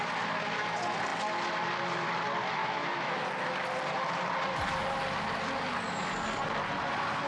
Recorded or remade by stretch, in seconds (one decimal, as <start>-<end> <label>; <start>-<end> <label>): 0.0-2.6 recorded; 2.6-3.2 remade; 3.2-7.3 recorded